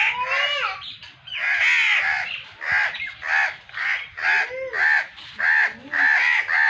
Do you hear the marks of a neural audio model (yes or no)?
no